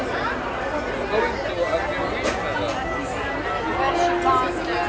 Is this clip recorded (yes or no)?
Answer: yes